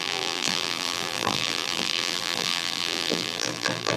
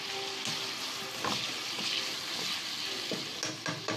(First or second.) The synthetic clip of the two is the first